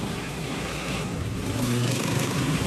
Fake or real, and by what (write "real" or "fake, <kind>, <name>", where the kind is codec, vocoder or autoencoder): fake, codec, SNAC